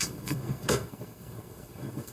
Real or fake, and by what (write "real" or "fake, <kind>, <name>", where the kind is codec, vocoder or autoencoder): fake, codec, SNAC